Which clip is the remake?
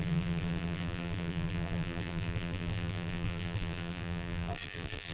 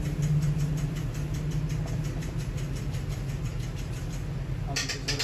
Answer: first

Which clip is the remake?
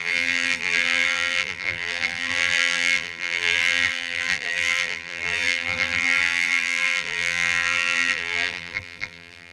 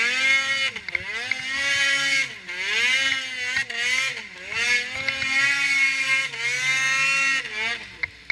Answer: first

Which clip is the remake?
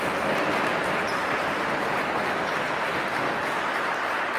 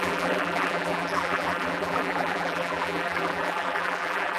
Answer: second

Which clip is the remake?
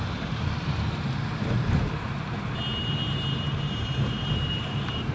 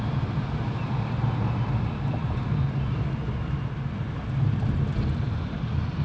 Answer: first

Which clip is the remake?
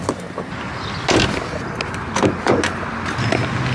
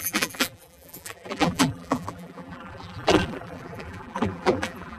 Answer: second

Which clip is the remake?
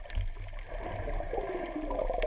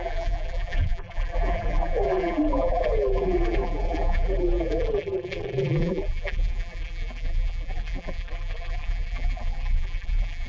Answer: second